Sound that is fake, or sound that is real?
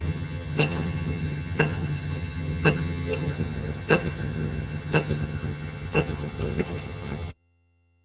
fake